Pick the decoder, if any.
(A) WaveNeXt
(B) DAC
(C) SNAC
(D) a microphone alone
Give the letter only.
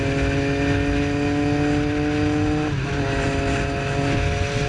D